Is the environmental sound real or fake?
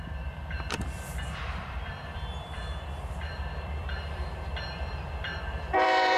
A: fake